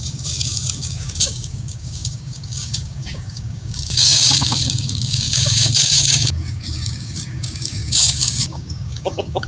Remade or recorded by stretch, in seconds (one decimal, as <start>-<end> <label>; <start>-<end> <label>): 0.0-9.5 remade